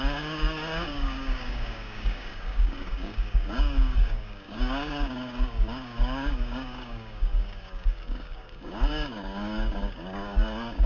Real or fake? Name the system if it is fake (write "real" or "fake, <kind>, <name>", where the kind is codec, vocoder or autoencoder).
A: fake, codec, DAC